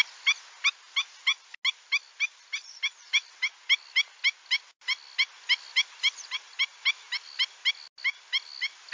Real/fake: real